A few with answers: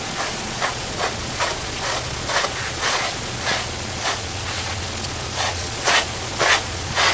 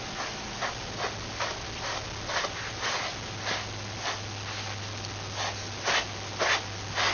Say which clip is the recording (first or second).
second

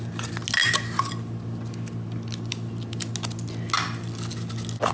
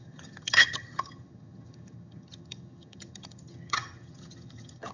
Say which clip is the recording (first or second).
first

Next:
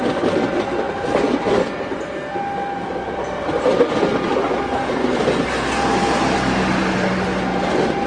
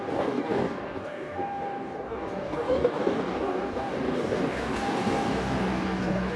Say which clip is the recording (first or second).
first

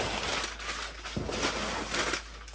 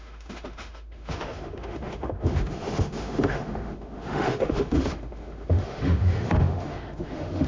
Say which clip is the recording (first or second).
first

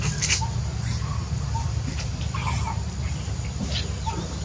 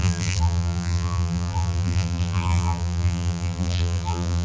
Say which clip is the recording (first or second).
first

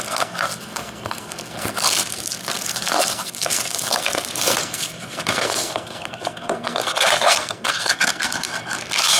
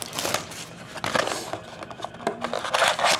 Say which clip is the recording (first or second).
second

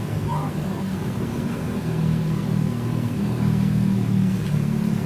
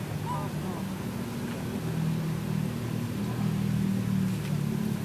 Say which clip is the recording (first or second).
second